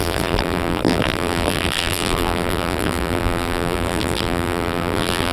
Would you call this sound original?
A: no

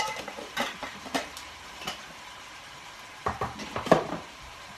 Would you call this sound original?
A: no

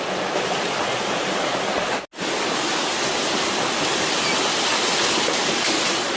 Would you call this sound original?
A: yes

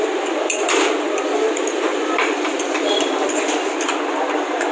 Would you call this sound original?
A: no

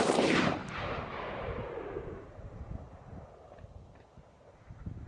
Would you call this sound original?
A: no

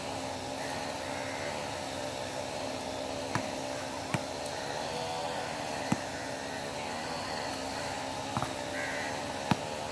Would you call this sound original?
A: yes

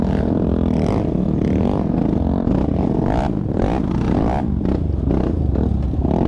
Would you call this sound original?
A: yes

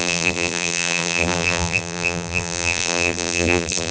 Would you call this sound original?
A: no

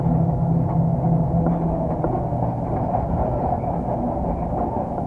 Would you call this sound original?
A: yes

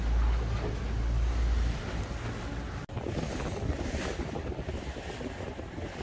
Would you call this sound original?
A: yes